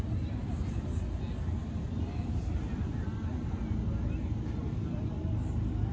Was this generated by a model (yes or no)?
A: no